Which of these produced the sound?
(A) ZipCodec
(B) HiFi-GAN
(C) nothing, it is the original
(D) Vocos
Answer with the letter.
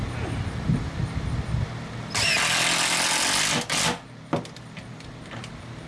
C